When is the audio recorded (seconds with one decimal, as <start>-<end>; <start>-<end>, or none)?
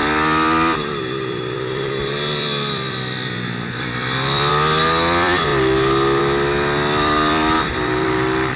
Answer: 5.5-6.2